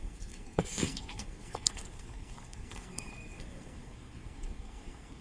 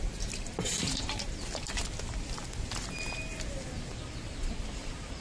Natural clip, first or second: second